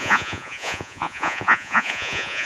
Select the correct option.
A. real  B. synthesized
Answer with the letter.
B